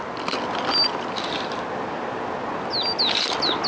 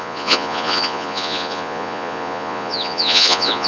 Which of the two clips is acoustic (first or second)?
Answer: first